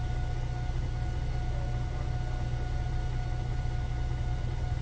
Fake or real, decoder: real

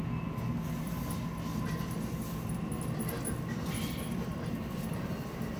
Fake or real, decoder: real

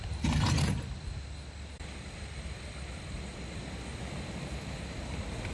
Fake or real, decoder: real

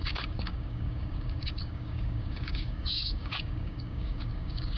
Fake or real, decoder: fake, codec, DAC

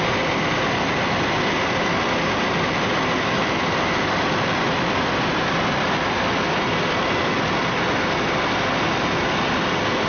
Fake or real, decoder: real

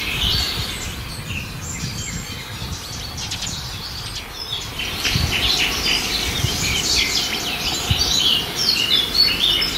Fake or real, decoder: fake, vocoder, BigVGAN v2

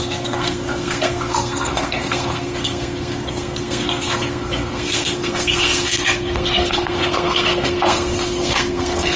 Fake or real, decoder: fake, codec, SNAC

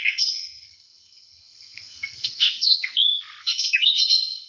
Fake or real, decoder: fake, codec, SNAC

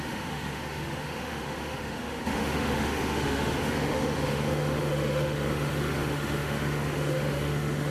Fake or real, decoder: fake, autoencoder, DAC-VAE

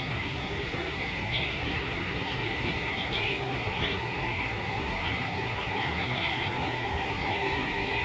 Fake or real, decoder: fake, codec, SNAC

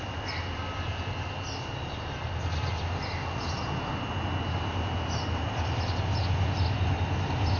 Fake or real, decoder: real